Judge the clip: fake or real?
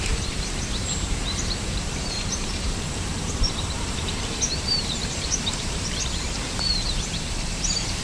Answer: fake